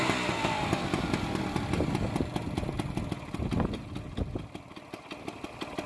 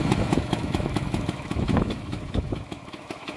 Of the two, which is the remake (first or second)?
second